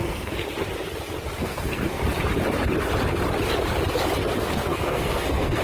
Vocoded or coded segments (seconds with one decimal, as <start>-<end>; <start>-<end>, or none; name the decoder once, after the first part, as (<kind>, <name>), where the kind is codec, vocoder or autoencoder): 0.0-0.4 (codec, SNAC); 1.4-2.0; 4.4-5.6